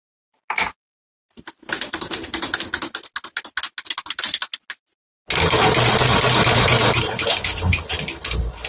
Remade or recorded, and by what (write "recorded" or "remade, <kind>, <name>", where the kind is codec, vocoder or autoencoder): recorded